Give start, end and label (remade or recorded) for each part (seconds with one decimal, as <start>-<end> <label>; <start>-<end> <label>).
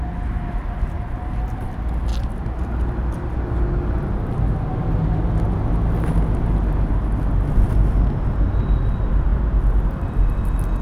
0.0-10.8 recorded